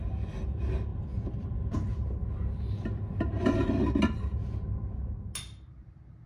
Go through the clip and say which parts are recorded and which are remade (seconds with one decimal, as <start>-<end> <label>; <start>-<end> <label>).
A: 0.0-6.3 recorded